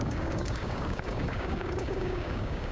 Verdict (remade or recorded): remade